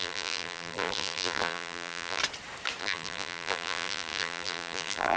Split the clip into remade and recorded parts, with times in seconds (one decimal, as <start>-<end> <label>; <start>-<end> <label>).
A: 0.0-2.2 remade; 2.2-2.8 recorded; 2.8-5.2 remade

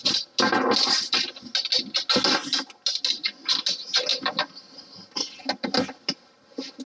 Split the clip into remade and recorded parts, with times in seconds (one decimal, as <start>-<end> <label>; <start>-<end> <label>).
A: 0.0-6.9 recorded

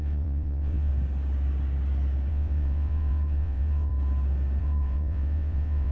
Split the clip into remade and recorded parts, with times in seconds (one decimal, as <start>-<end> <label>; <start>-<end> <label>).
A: 0.0-0.9 remade; 0.9-2.3 recorded; 2.3-3.9 remade; 3.9-4.6 recorded; 4.6-5.9 remade

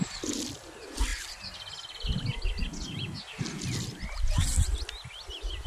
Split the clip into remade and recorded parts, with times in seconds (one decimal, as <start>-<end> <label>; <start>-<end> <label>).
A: 0.0-5.7 recorded

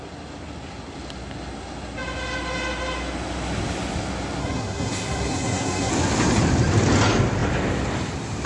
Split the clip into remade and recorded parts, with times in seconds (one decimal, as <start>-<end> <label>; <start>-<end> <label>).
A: 0.0-4.4 recorded; 4.4-5.9 remade; 5.9-8.5 recorded

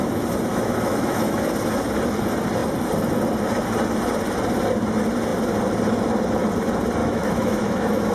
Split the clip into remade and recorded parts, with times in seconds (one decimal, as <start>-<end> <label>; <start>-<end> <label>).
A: 0.0-0.5 recorded; 0.5-1.4 remade; 1.4-7.0 recorded; 7.0-8.1 remade

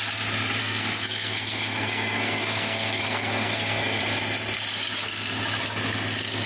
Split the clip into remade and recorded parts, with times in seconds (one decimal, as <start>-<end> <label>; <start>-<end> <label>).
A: 0.0-0.6 recorded; 0.6-4.0 remade; 4.0-6.5 recorded

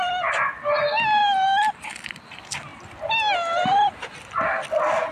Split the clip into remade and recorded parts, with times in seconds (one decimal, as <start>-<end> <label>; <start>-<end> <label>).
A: 0.0-5.1 recorded